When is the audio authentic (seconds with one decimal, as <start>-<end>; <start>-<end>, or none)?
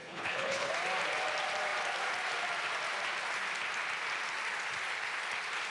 0.7-5.7